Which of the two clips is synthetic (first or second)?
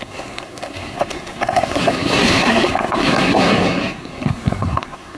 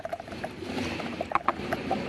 first